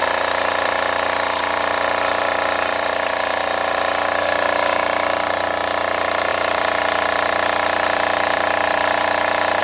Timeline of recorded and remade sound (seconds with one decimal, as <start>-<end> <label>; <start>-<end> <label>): 0.0-3.7 remade; 3.7-6.3 recorded; 6.3-9.6 remade